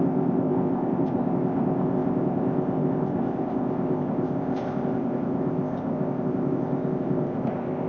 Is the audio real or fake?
fake